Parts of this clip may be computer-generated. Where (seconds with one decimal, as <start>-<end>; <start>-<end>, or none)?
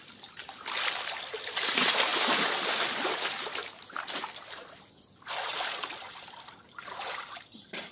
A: none